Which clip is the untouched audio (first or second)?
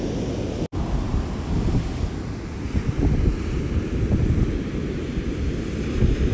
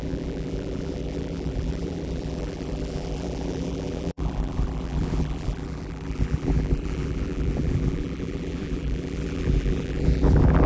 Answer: first